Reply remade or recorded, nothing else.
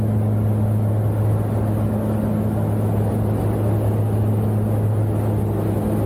recorded